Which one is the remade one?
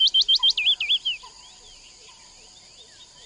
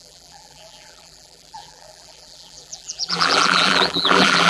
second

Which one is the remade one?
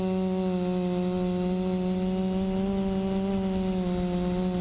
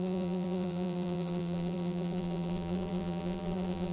second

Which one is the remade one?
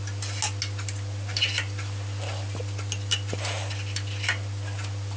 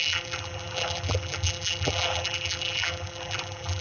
second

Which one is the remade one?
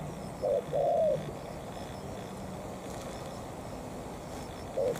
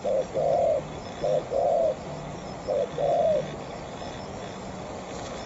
second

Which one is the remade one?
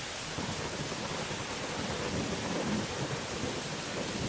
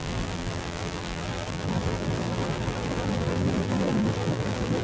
second